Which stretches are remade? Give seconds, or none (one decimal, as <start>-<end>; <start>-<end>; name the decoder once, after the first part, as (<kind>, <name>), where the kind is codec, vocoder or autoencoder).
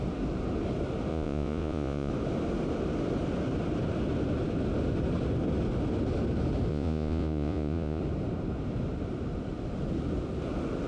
1.1-2.1 (vocoder, Vocos); 6.7-8.0